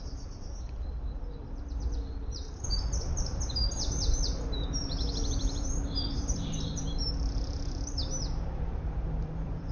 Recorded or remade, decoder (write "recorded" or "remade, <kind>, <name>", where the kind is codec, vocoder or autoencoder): remade, vocoder, BigVGAN v2